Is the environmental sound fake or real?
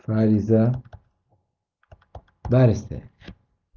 real